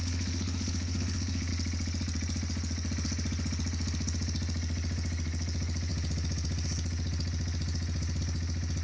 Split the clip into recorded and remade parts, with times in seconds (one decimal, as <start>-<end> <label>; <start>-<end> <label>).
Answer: 0.0-1.5 remade; 1.5-8.8 recorded